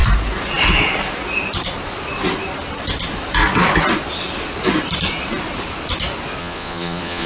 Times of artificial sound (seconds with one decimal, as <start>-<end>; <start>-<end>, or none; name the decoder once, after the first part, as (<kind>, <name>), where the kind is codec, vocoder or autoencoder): 6.4-7.3 (vocoder, Vocos)

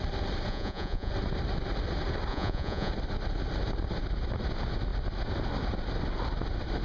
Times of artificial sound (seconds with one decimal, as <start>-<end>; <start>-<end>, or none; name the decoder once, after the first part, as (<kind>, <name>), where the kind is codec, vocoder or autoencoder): 0.5-1.1 (vocoder, Vocos); 2.3-2.9